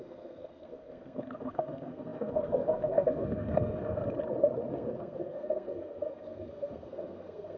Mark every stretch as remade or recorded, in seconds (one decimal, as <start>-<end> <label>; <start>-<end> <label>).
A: 0.0-4.0 remade; 4.0-4.7 recorded; 4.7-7.6 remade